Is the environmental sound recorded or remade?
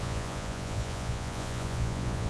remade